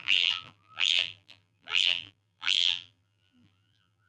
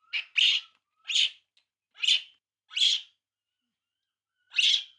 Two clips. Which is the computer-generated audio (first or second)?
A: first